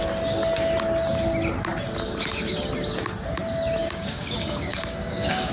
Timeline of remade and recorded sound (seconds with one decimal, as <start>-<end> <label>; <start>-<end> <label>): 0.0-3.8 recorded; 3.8-5.5 remade